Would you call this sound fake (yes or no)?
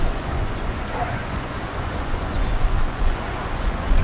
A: yes